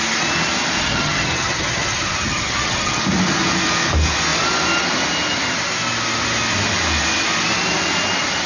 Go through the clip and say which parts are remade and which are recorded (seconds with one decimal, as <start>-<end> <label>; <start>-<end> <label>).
0.0-0.8 recorded; 0.8-3.0 remade; 3.0-8.5 recorded